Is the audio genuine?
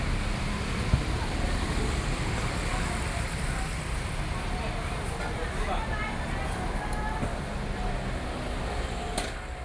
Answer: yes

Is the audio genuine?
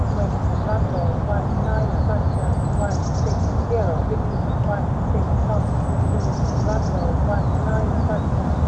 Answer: yes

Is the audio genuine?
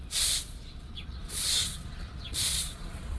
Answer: no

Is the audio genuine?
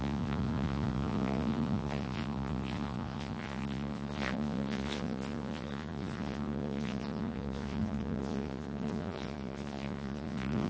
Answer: no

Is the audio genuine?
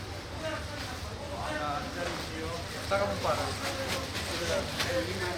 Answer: yes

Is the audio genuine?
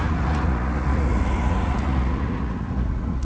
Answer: no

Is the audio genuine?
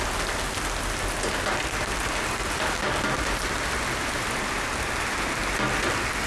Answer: yes